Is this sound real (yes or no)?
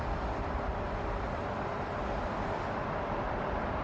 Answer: yes